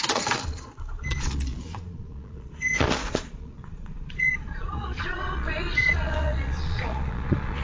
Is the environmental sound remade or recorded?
remade